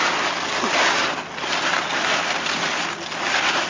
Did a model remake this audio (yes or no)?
no